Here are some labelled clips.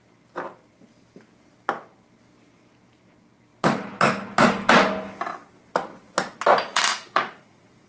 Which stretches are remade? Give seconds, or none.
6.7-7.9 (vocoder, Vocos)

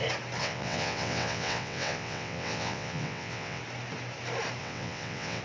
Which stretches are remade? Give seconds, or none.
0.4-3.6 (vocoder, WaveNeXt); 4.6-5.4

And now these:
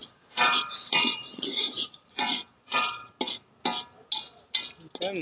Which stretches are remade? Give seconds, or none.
0.0-3.1 (vocoder, Vocos)

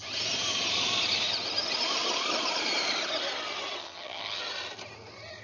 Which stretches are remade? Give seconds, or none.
3.8-4.4 (vocoder, HiFi-GAN)

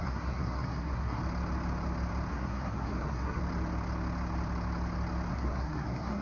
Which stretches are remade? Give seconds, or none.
0.0-1.2 (codec, SNAC); 2.3-3.4; 5.3-6.2

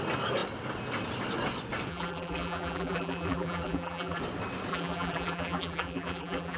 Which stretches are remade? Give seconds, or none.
1.9-4.2 (vocoder, BigVGAN v2); 4.7-6.6

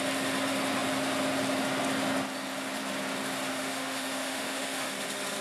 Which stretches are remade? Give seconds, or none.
3.5-4.9 (autoencoder, DAC-VAE)